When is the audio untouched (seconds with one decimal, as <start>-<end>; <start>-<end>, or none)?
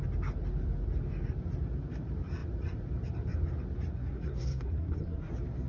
0.0-3.9; 5.3-5.7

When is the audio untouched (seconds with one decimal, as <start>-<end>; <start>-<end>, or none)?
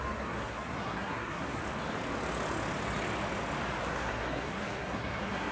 1.6-3.8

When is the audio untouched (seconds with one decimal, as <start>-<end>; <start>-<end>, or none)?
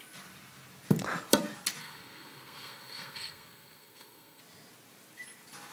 0.0-1.8; 4.4-5.7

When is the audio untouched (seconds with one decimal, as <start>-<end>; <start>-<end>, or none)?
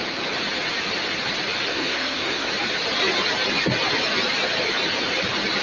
0.0-1.7; 2.5-5.6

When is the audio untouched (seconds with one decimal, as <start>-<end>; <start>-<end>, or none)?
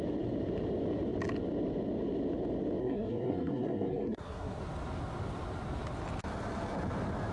0.0-2.8; 4.6-7.3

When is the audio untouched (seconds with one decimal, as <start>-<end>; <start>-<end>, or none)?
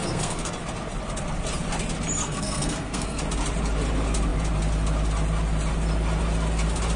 0.5-2.2; 3.2-7.0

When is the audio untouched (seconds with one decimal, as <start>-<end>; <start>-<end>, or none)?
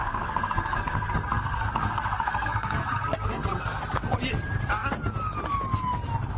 3.8-6.4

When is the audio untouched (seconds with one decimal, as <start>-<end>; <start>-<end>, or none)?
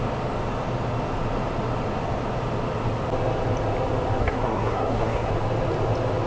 0.0-4.2; 5.3-6.3